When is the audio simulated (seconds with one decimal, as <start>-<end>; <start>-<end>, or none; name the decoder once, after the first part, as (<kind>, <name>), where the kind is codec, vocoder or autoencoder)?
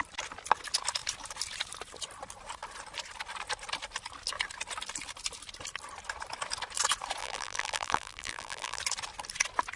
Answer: 7.2-8.8 (vocoder, BigVGAN v2)